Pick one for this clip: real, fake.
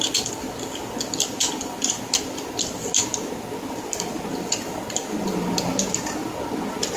real